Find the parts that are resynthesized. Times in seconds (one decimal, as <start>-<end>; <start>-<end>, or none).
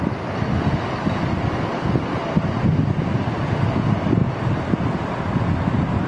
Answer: none